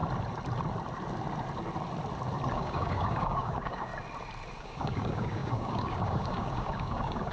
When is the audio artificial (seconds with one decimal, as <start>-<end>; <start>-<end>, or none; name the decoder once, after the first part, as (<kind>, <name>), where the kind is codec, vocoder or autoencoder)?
2.5-3.9 (codec, DAC); 4.6-7.3